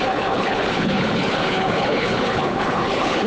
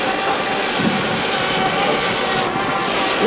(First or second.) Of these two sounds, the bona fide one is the second